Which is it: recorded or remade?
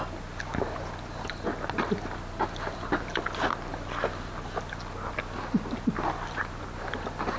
recorded